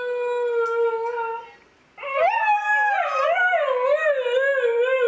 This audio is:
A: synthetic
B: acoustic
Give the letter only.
B